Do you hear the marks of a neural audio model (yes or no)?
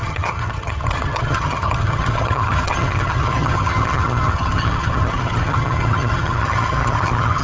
yes